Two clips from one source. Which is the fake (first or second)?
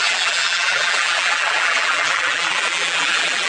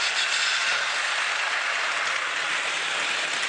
first